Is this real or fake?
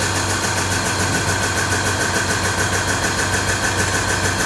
real